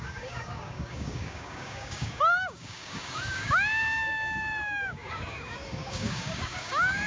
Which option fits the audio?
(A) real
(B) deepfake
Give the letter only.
B